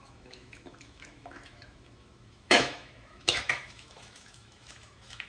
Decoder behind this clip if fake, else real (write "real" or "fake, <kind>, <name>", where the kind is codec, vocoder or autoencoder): fake, autoencoder, DAC-VAE